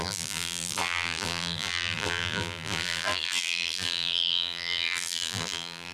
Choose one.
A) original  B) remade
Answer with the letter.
B